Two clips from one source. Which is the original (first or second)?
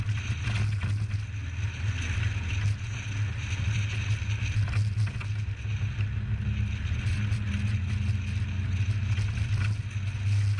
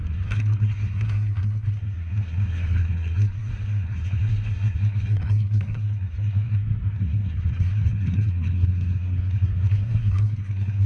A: first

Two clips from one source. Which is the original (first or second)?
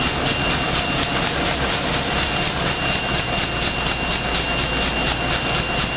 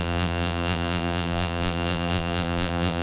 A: first